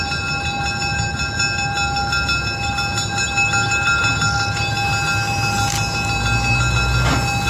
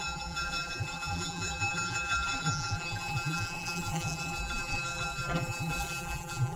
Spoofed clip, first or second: second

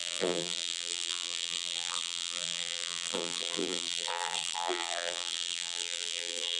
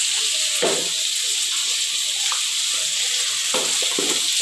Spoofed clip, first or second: first